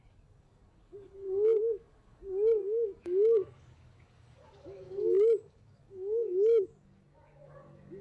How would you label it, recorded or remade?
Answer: remade